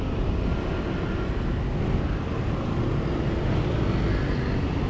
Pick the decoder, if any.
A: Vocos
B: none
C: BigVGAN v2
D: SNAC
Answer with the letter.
B